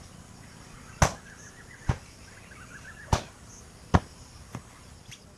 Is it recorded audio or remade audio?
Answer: recorded